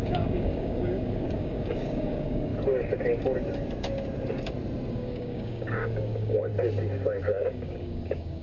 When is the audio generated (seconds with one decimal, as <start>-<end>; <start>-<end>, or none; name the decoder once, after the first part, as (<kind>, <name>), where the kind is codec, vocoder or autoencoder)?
0.0-2.5 (codec, DAC); 4.9-6.5; 7.2-8.4